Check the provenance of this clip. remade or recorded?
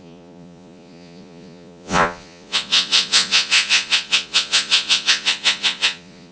remade